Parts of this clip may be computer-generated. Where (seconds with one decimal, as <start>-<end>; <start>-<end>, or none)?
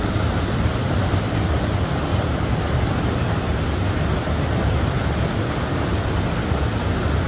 none